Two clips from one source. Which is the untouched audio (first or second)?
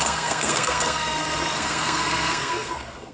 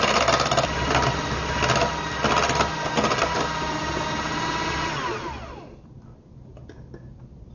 second